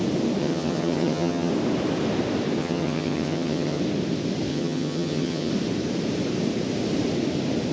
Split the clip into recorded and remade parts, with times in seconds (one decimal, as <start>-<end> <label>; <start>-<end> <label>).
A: 0.0-0.4 recorded; 0.4-1.5 remade; 1.5-2.6 recorded; 2.6-3.8 remade; 3.8-4.5 recorded; 4.5-5.5 remade; 5.5-7.7 recorded